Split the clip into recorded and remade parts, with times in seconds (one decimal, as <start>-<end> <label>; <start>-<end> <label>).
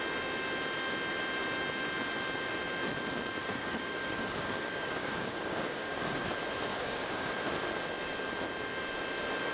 0.0-3.4 recorded; 3.4-6.3 remade; 6.3-6.7 recorded; 6.7-7.3 remade; 7.3-9.5 recorded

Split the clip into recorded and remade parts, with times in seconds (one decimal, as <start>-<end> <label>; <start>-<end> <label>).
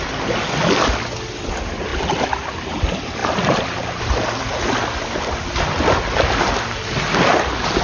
0.0-7.8 recorded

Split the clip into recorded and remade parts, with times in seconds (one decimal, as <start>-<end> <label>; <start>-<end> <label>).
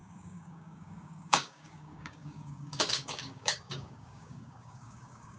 0.0-5.4 remade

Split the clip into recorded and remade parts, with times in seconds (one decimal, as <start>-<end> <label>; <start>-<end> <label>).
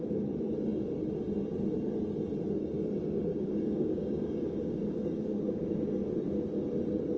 0.0-3.3 recorded; 3.3-5.9 remade; 5.9-7.2 recorded